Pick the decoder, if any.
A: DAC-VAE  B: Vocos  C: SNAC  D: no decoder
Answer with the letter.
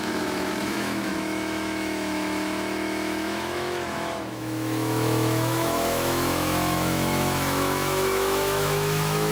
A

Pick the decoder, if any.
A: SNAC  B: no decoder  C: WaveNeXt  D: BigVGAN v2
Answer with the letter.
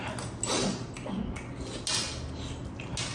B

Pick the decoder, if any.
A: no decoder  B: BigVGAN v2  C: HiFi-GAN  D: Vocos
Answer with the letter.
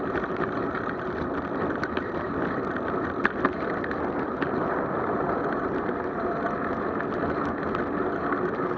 A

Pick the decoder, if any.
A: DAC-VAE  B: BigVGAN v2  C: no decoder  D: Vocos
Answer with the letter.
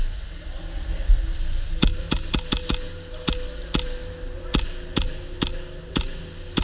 C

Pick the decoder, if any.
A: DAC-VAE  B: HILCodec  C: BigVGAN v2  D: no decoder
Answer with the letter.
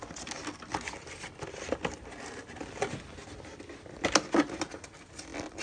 D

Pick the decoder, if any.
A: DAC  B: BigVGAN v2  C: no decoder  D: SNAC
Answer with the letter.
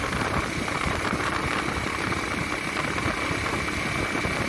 C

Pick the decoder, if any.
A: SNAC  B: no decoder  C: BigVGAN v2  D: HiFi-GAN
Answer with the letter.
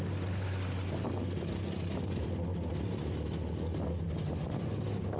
B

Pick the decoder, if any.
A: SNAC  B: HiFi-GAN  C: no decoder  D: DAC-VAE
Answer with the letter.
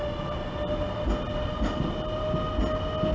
C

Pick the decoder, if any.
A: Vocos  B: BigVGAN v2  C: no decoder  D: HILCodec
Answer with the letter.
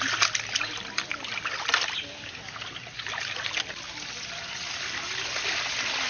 C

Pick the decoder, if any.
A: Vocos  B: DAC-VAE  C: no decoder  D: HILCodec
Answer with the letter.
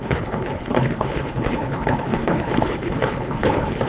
D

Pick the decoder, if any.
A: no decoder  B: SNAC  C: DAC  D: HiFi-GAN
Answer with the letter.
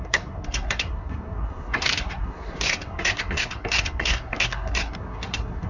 B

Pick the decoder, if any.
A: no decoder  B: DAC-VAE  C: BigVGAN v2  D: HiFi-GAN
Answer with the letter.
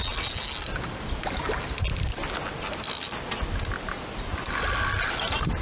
A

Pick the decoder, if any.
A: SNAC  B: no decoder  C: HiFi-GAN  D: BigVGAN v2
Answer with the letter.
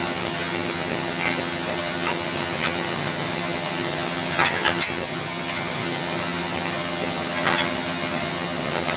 C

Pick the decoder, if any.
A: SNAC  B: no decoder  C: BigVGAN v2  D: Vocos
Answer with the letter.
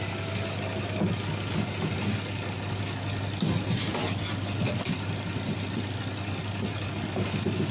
B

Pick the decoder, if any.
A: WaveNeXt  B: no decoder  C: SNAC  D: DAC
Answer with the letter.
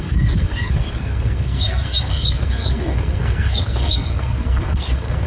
C